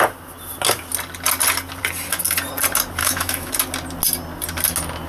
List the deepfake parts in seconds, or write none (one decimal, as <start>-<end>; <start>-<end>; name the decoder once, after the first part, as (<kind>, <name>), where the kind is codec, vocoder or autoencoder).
3.0-3.5 (autoencoder, DAC-VAE)